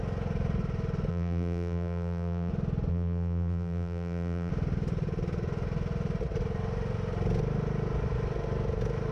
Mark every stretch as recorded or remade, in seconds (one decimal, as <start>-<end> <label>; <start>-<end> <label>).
0.0-1.1 recorded; 1.1-2.5 remade; 2.5-2.9 recorded; 2.9-4.5 remade; 4.5-9.1 recorded

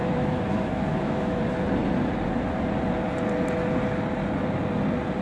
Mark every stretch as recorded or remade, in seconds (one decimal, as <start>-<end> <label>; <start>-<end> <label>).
0.0-1.4 remade; 1.4-5.2 recorded

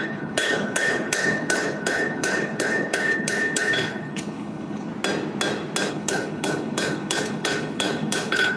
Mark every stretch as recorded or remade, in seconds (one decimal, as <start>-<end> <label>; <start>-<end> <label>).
0.0-4.9 remade; 4.9-5.9 recorded; 5.9-8.6 remade

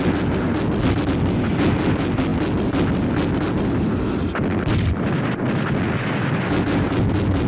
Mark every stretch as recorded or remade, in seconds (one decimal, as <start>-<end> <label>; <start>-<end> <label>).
0.0-7.5 recorded

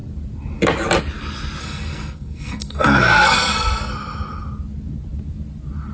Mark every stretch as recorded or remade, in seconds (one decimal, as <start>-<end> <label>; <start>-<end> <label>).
0.0-1.6 recorded; 1.6-3.9 remade; 3.9-5.9 recorded

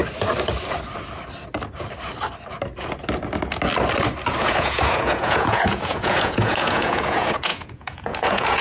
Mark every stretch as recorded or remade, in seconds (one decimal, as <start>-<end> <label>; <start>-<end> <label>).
0.0-4.4 recorded; 4.4-8.6 remade

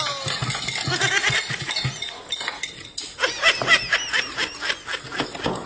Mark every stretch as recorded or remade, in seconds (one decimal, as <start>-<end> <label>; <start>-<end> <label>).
0.0-5.7 recorded